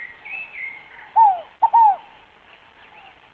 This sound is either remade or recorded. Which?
recorded